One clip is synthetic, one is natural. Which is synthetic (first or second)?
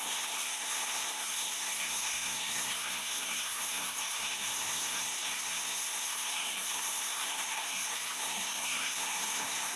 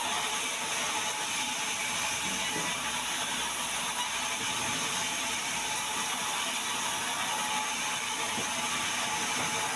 first